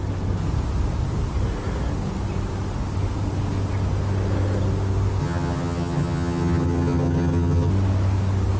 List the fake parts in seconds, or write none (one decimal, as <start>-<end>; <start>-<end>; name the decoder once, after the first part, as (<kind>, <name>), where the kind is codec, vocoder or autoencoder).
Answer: 5.2-7.7 (vocoder, HiFi-GAN)